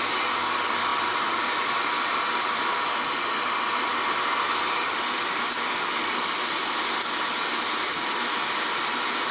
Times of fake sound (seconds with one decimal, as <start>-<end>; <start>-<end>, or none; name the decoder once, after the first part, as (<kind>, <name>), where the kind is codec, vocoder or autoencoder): none